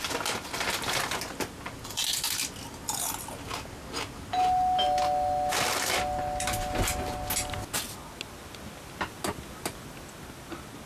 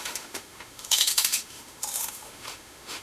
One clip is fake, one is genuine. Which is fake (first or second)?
second